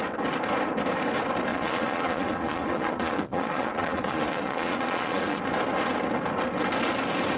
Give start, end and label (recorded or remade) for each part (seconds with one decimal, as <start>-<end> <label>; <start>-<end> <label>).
0.0-1.5 recorded; 1.5-5.4 remade; 5.4-7.4 recorded